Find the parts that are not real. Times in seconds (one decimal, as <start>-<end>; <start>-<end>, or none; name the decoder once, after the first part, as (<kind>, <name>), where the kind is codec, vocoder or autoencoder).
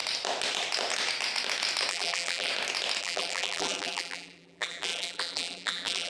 1.9-2.5 (vocoder, BigVGAN v2); 3.0-6.1